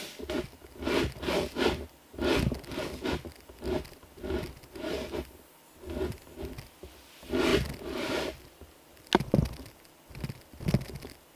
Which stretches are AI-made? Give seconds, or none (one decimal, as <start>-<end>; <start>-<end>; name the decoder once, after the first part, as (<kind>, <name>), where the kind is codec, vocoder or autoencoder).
none